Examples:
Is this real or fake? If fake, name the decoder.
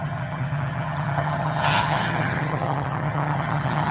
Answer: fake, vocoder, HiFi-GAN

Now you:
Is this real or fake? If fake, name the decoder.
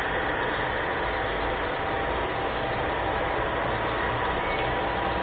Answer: real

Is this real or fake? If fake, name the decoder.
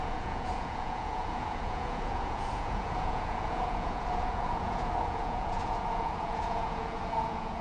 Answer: fake, vocoder, Vocos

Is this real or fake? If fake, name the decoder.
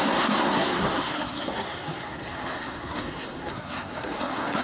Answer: fake, codec, SNAC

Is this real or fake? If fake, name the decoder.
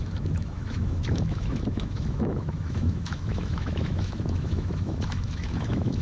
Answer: fake, autoencoder, DAC-VAE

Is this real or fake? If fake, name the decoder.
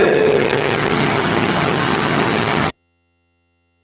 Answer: fake, vocoder, HiFi-GAN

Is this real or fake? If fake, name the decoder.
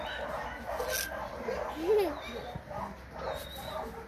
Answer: real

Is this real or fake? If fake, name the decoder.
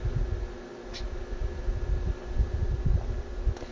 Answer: real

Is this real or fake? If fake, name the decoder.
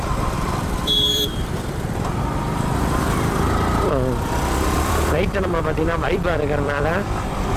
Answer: fake, vocoder, BigVGAN v2